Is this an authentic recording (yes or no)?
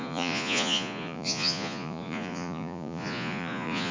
no